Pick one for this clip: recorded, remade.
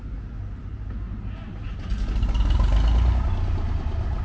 recorded